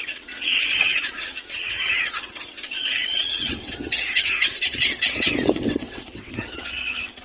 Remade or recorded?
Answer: remade